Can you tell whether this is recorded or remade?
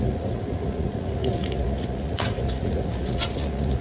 remade